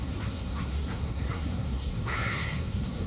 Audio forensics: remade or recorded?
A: remade